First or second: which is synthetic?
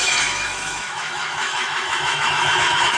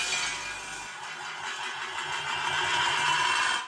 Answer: first